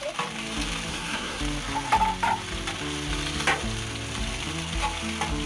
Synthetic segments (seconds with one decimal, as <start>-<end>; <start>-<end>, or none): 0.9-1.4